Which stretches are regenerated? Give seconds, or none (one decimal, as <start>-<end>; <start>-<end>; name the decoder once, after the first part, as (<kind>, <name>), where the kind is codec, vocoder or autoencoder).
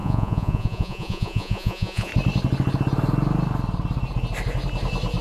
0.0-2.1 (vocoder, Vocos)